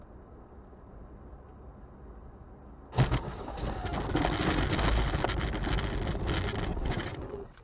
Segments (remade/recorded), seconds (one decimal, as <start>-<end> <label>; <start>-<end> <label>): 0.0-6.7 recorded; 6.7-7.6 remade